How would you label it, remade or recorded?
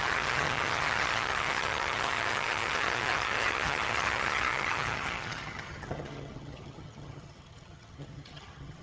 remade